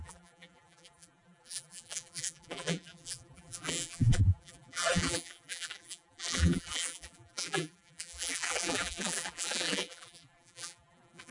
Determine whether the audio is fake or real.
fake